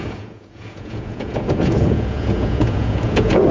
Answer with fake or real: fake